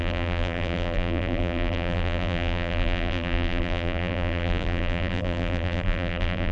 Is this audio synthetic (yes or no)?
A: yes